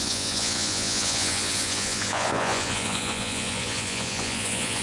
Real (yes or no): no